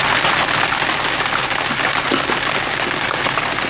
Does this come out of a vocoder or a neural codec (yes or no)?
no